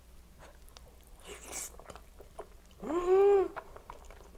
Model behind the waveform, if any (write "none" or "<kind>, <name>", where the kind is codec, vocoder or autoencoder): none